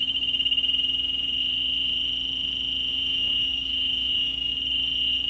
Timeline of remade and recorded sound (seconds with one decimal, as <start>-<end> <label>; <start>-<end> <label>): 0.0-2.9 recorded; 2.9-4.5 remade; 4.5-5.3 recorded